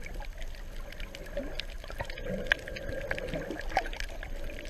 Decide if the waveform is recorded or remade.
recorded